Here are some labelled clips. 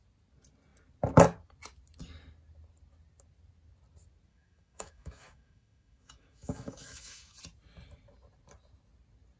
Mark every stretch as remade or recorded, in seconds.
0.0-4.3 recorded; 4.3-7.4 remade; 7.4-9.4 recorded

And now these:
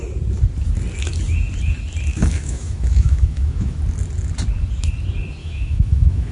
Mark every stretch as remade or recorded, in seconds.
0.0-2.1 recorded; 2.1-3.8 remade; 3.8-5.4 recorded; 5.4-6.3 remade

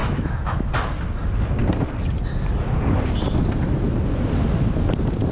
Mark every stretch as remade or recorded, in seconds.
0.0-0.7 remade; 0.7-5.3 recorded

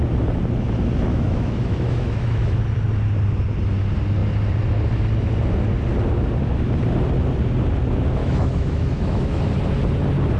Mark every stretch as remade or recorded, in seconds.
0.0-1.1 recorded; 1.1-2.6 remade; 2.6-8.2 recorded; 8.2-9.4 remade; 9.4-10.4 recorded

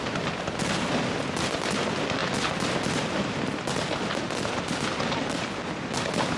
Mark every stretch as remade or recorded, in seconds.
0.0-6.4 recorded